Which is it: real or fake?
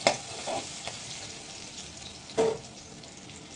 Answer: real